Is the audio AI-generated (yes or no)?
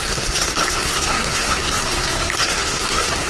yes